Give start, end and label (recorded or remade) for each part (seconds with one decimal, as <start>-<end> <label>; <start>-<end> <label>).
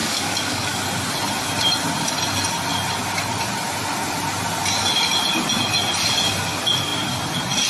0.0-0.8 remade; 0.8-7.7 recorded